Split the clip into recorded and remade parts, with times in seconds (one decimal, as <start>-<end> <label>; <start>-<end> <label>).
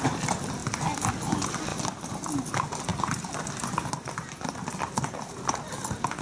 0.0-6.2 recorded